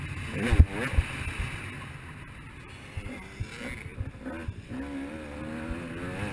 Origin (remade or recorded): recorded